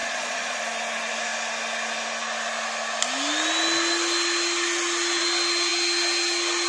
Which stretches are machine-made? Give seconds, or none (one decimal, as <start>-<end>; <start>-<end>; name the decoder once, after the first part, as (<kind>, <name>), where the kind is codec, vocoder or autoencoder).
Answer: 0.0-0.6 (vocoder, Vocos)